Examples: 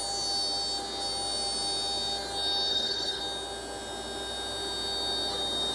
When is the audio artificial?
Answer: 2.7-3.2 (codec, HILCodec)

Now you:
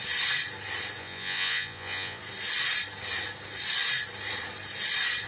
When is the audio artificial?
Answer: 1.0-2.2 (vocoder, Vocos)

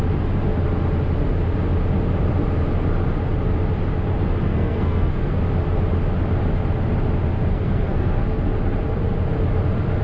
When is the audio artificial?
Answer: 4.5-5.4 (codec, SNAC); 7.5-8.2

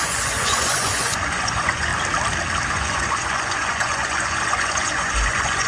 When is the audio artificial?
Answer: 0.0-1.9 (vocoder, Vocos); 2.7-5.7

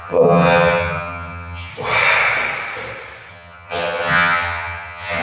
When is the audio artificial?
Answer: 0.0-1.7 (vocoder, HiFi-GAN); 3.3-5.2

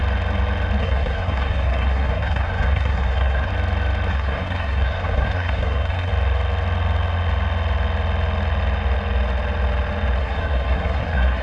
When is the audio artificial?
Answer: 0.8-3.5 (codec, SNAC); 4.1-6.1; 10.2-11.4